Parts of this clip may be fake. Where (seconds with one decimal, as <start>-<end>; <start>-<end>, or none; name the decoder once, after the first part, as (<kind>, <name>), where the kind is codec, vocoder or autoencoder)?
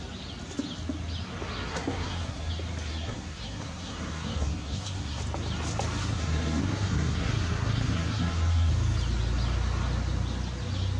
1.7-2.5 (codec, SNAC); 2.9-5.2; 6.0-8.7